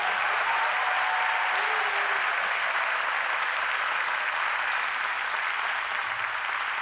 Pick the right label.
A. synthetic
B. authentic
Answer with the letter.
B